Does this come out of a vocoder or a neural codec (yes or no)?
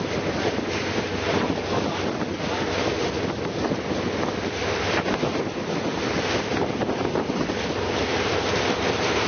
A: yes